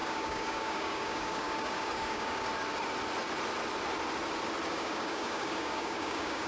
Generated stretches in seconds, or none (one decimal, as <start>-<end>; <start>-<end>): 0.0-2.5; 4.7-6.5